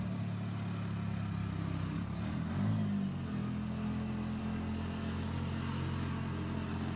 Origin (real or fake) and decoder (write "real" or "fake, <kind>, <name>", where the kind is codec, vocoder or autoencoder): real